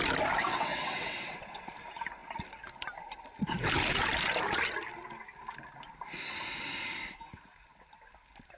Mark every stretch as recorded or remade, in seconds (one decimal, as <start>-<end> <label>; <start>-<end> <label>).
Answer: 0.0-0.5 recorded; 0.5-1.8 remade; 1.8-8.6 recorded